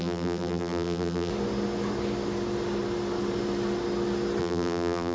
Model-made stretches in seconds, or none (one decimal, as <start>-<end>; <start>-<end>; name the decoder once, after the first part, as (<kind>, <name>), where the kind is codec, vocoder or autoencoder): 0.0-1.3 (vocoder, BigVGAN v2); 4.4-5.1